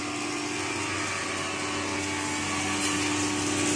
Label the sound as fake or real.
real